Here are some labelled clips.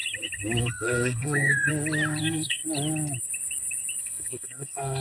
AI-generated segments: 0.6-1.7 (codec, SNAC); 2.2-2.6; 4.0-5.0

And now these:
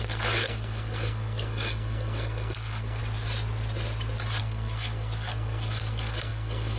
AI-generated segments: 0.0-3.0 (codec, SNAC); 4.4-6.8

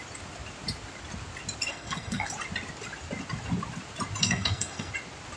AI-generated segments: 1.7-2.3 (codec, SNAC); 4.2-4.9

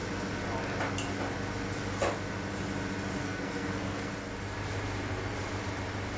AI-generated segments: 3.2-4.1 (codec, SNAC)